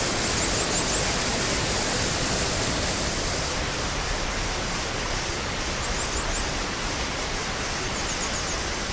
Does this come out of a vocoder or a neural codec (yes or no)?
no